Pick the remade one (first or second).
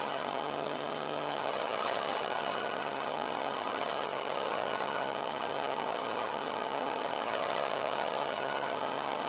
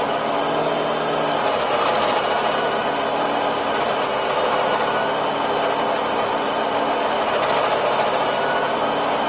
first